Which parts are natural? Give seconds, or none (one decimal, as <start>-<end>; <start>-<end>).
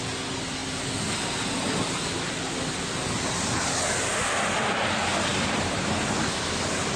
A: 0.0-5.3; 6.0-7.0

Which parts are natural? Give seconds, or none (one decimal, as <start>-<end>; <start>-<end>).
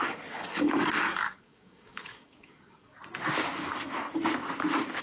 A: 3.0-5.0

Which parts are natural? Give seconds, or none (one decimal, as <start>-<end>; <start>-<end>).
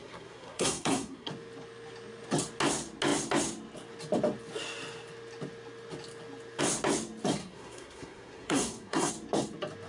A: 1.3-7.4; 9.1-9.9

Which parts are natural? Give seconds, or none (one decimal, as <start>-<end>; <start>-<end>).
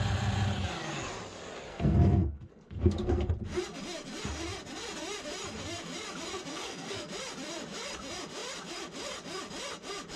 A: 0.0-1.7; 3.3-6.5; 7.1-10.2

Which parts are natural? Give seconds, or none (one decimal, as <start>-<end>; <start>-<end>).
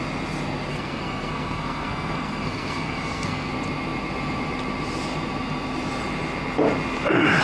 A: 0.0-0.7; 3.5-7.4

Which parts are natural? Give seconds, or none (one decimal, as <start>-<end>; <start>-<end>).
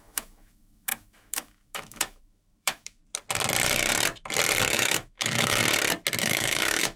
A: 3.0-4.7; 5.6-6.2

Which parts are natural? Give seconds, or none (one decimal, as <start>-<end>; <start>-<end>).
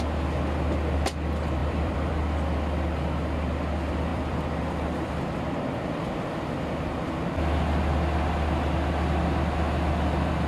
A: 0.0-1.6; 2.1-4.1; 6.8-10.5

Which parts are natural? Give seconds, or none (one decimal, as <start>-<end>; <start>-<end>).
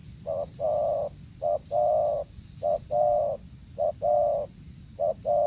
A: 0.0-5.5